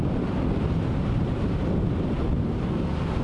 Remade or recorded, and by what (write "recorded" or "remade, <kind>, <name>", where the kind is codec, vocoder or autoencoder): recorded